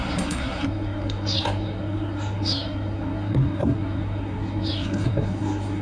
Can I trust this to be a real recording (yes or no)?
no